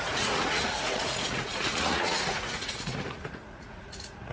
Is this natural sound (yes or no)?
no